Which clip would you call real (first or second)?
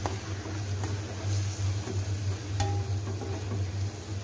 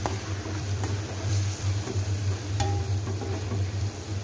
first